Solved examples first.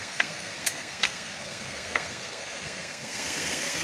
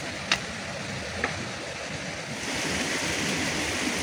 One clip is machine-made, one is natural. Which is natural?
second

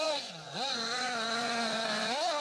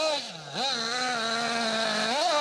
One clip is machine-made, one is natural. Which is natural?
second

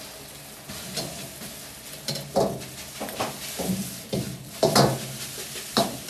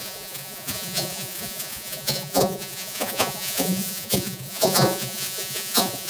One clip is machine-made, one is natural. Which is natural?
first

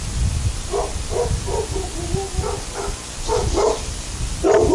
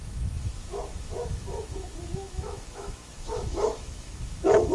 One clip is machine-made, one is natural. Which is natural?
first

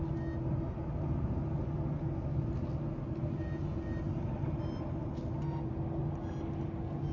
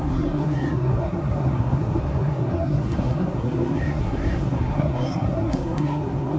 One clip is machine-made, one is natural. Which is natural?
first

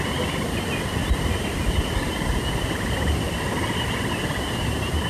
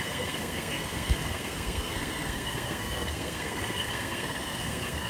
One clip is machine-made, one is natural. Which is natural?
first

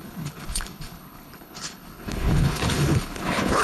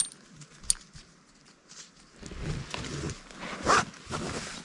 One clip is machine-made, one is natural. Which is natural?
second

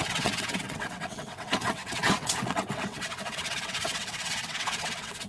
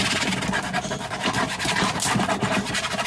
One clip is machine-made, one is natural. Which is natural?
second